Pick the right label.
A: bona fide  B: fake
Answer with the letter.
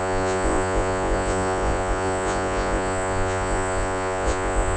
B